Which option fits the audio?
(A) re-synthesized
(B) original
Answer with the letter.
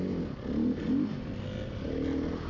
B